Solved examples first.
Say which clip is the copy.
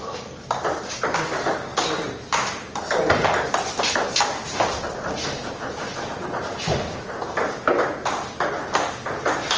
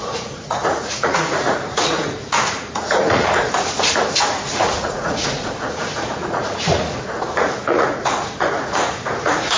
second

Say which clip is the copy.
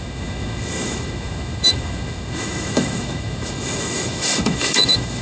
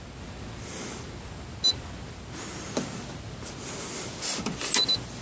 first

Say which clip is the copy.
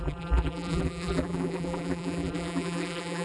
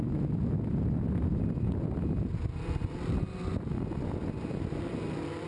first